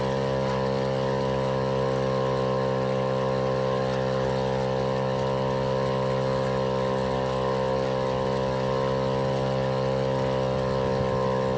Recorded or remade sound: recorded